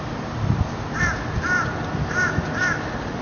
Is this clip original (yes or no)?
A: yes